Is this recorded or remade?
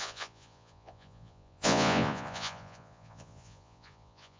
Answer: remade